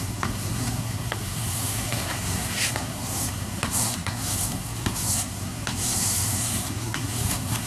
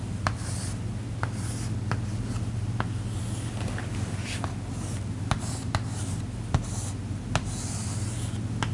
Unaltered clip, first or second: second